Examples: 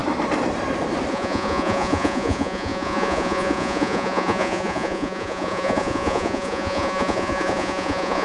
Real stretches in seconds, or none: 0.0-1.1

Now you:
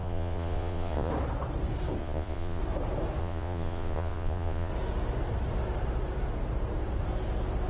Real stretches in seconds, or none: 1.1-2.0; 2.6-3.2; 4.7-7.7

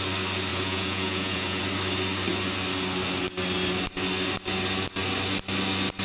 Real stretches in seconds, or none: 0.0-0.5; 1.6-6.0